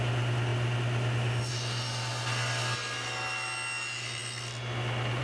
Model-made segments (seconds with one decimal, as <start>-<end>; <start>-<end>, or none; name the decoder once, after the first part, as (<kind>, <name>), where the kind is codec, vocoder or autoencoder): none